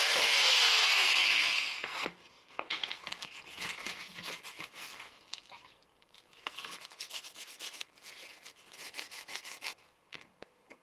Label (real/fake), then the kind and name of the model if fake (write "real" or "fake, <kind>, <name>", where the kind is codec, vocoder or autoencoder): fake, codec, SNAC